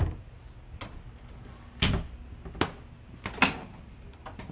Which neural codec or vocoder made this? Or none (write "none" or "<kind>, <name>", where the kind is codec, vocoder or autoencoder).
none